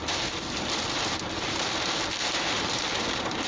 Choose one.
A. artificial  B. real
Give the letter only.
B